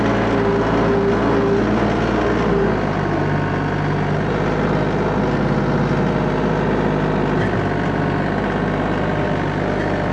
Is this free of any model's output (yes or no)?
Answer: yes